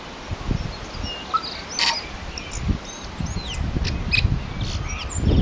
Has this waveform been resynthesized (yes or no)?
no